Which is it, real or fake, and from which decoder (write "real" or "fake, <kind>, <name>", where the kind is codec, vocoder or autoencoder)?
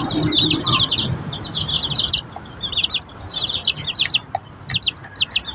real